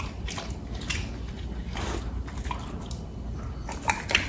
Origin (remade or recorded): recorded